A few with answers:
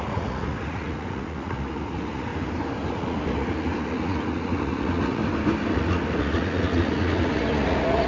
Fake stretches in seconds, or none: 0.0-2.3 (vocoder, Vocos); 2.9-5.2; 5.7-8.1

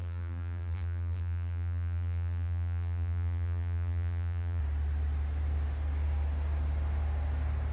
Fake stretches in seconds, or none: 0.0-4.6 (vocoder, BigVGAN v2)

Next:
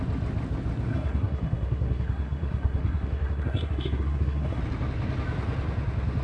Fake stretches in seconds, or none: 0.9-4.6 (codec, SNAC)

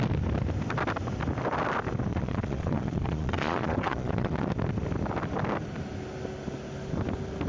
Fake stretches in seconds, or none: 2.1-4.5 (vocoder, Vocos)

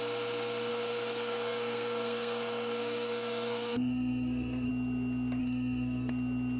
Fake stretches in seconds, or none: 0.7-4.7 (codec, SNAC); 5.4-6.1

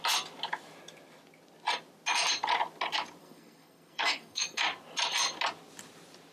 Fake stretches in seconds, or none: 3.2-4.6 (codec, SNAC)